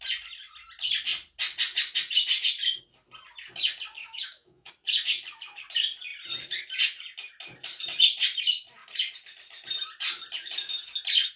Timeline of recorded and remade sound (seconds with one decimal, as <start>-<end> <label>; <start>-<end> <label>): 0.0-4.0 recorded; 4.0-4.7 remade; 4.7-11.4 recorded

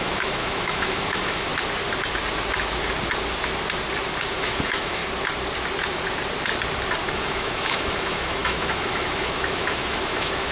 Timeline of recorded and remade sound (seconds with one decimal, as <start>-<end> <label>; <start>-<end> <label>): 0.0-1.5 remade; 1.5-4.4 recorded; 4.4-5.0 remade; 5.0-7.1 recorded; 7.1-10.5 remade